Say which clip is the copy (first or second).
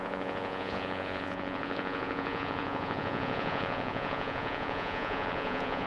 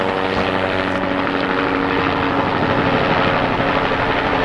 first